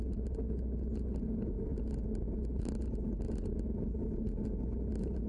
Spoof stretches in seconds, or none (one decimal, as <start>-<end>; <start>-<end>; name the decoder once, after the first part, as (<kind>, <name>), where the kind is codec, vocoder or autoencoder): none